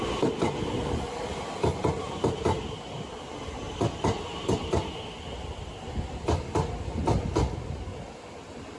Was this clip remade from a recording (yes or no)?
no